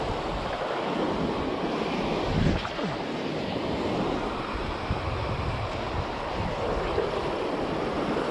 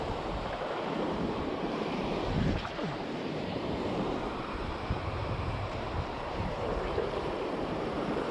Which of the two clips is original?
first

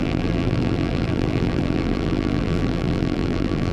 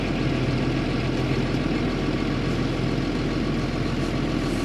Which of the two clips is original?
second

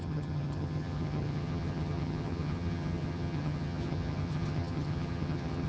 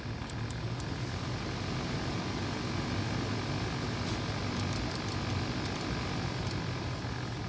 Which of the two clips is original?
second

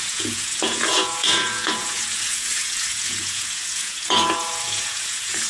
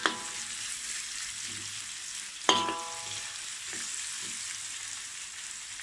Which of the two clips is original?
second